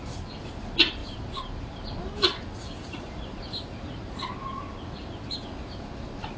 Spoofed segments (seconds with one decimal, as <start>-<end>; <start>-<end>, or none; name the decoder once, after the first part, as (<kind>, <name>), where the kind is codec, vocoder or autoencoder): 1.0-1.9 (vocoder, BigVGAN v2); 2.8-4.2